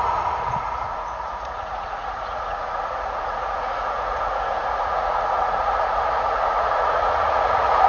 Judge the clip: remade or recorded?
remade